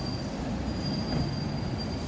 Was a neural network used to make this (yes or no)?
no